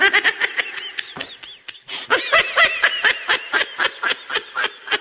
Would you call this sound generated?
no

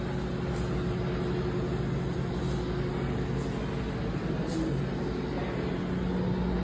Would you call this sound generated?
no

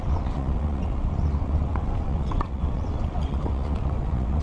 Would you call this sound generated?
yes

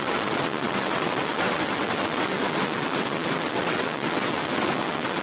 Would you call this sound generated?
yes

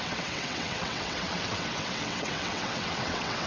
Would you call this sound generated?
yes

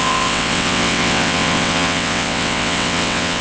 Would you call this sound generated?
yes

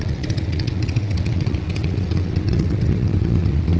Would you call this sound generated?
yes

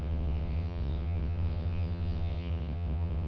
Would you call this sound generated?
yes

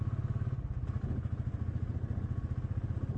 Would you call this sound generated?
no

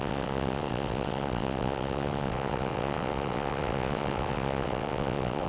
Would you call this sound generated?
yes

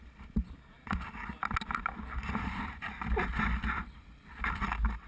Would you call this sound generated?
no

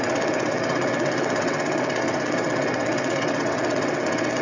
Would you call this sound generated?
yes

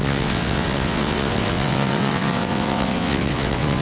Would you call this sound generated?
yes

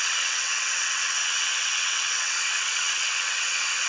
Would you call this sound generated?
yes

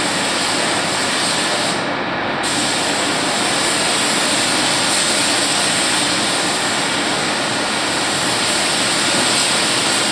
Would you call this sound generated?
no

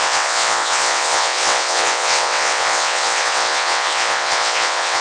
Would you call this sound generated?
yes